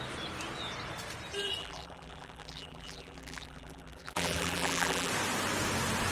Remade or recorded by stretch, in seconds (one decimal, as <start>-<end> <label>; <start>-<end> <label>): 0.0-1.6 recorded; 1.6-5.1 remade; 5.1-6.1 recorded

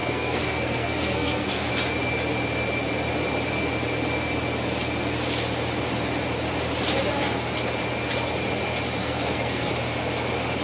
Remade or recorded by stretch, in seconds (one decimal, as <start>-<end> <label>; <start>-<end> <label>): 0.0-1.7 remade; 1.7-9.0 recorded; 9.0-9.7 remade; 9.7-10.6 recorded

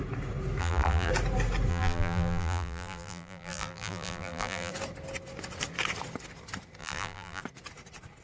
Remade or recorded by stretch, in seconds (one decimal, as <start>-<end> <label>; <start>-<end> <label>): 0.0-0.6 recorded; 0.6-1.1 remade; 1.1-1.7 recorded; 1.7-4.7 remade; 4.7-6.8 recorded; 6.8-7.4 remade; 7.4-8.2 recorded

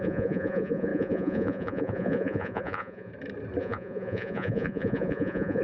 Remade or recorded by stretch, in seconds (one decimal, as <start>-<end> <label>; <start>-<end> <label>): 0.0-3.1 remade; 3.1-3.6 recorded; 3.6-5.6 remade

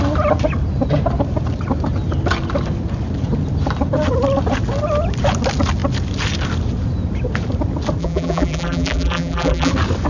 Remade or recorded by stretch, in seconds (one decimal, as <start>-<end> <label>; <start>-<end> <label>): 0.0-8.0 recorded; 8.0-9.7 remade; 9.7-10.1 recorded

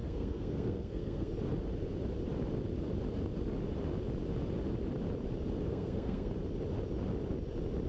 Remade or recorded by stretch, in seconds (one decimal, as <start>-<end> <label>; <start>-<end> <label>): 0.0-1.3 remade; 1.3-5.7 recorded; 5.7-6.3 remade; 6.3-7.9 recorded